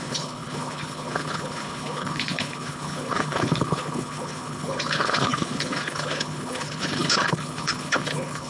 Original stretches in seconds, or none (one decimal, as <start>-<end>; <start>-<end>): none